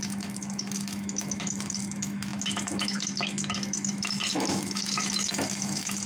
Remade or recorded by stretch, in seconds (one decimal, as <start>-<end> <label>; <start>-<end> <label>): 0.0-6.1 remade